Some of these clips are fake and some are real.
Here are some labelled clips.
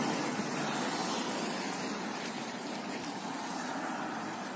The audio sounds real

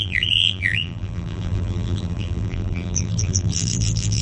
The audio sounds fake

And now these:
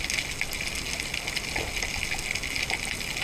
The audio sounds real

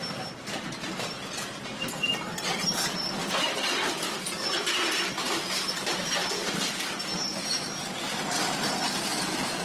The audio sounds real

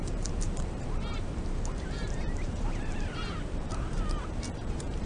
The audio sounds fake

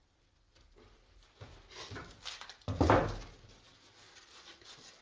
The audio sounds real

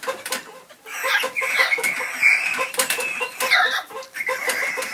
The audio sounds fake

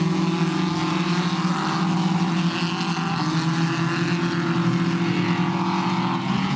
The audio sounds real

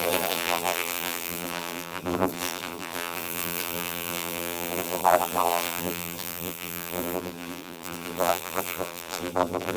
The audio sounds fake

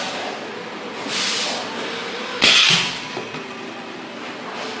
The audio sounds real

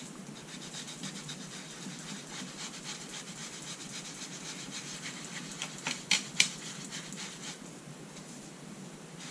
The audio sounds fake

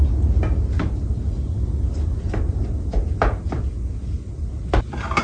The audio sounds real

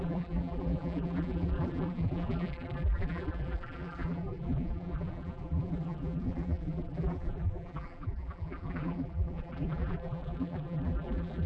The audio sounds fake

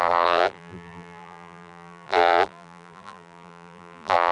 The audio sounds fake